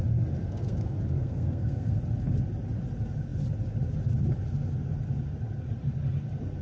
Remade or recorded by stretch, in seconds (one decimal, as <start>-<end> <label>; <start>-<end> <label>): 0.0-0.4 recorded; 0.4-2.0 remade; 2.0-6.6 recorded